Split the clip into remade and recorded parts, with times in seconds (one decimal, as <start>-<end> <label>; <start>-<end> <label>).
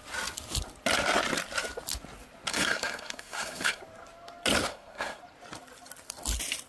0.0-2.5 recorded; 2.5-3.8 remade; 3.8-4.7 recorded; 4.7-5.2 remade; 5.2-6.7 recorded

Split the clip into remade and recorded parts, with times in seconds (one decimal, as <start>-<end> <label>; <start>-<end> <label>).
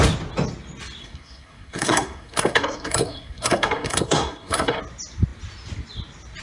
0.0-1.0 recorded; 1.0-4.8 remade; 4.8-6.4 recorded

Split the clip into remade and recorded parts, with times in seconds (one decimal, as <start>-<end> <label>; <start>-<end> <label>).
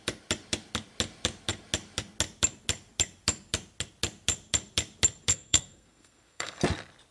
0.0-5.3 recorded; 5.3-6.6 remade; 6.6-7.1 recorded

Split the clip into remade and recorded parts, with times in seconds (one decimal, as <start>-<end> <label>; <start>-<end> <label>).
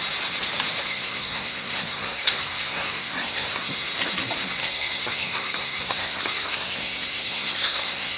0.0-0.9 recorded; 0.9-3.9 remade; 3.9-4.6 recorded; 4.6-8.2 remade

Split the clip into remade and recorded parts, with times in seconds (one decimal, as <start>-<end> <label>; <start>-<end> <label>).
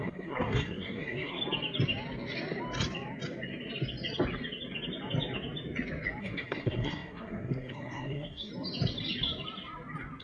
0.0-1.4 remade; 1.4-6.2 recorded; 6.2-8.5 remade; 8.5-10.2 recorded